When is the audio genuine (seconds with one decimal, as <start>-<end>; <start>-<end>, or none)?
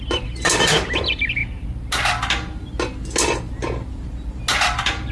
0.0-5.1